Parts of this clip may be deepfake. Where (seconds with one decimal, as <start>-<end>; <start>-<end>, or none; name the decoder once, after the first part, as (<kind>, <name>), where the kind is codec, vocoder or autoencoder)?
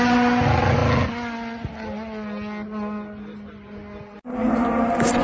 none